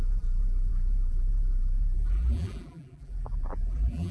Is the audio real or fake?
fake